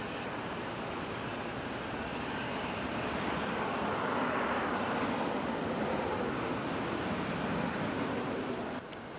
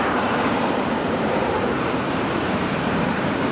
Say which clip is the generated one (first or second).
second